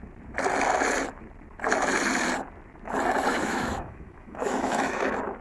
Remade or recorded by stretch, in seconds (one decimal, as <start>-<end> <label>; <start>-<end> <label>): 0.0-3.3 recorded; 3.3-5.0 remade; 5.0-5.4 recorded